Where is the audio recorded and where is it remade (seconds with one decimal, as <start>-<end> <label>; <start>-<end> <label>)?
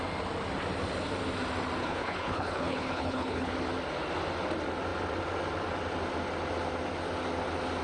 0.0-1.8 recorded; 1.8-3.5 remade; 3.5-7.8 recorded